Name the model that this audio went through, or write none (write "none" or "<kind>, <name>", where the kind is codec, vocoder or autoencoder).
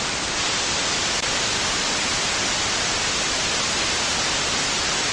none